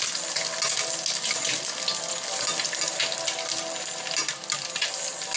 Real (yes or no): yes